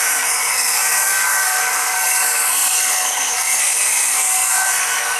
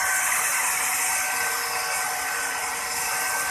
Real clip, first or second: second